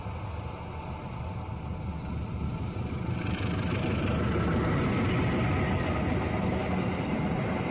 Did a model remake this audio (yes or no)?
no